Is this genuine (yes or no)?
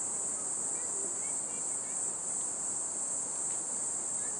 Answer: yes